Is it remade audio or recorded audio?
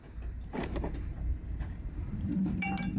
remade